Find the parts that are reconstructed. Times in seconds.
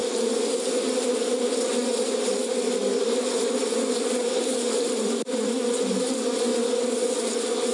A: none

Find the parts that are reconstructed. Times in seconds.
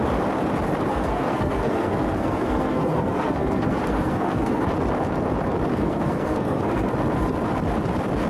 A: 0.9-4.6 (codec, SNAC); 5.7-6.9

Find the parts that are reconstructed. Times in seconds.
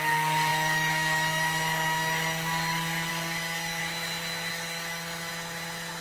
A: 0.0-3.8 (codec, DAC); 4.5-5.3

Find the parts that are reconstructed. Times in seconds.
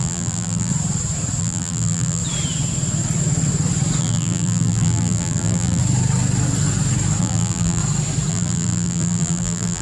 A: 0.0-0.7 (vocoder, BigVGAN v2); 1.4-2.2; 4.0-5.8; 7.2-7.8; 8.3-9.8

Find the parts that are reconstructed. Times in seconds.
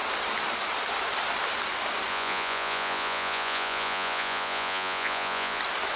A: 2.1-5.6 (vocoder, Vocos)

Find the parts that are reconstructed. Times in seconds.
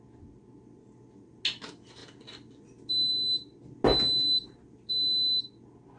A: none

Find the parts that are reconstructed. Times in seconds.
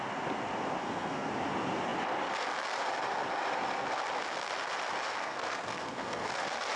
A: 0.8-1.3 (codec, SNAC); 5.1-6.3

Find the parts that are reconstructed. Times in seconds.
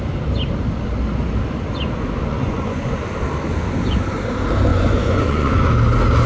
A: 2.3-2.9 (vocoder, Vocos); 4.7-5.7